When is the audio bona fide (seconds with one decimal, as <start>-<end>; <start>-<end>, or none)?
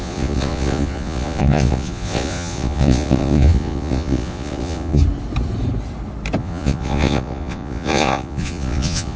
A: 5.0-6.4